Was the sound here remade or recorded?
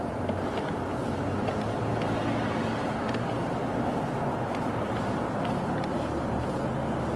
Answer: recorded